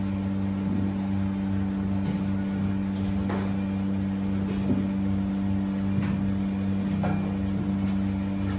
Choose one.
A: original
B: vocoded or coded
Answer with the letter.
A